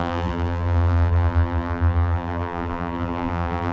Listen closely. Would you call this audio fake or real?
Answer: fake